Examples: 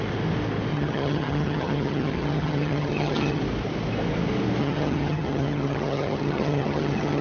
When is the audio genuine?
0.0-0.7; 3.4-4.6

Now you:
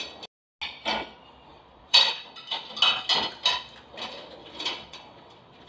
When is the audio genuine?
0.0-1.5; 2.2-4.4

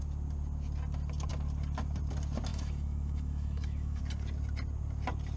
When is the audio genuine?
0.0-2.5; 4.0-5.4

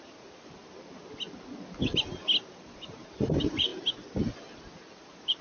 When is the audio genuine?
0.6-2.4; 3.7-5.0

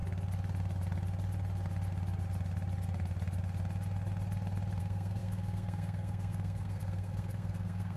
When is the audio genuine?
0.0-4.8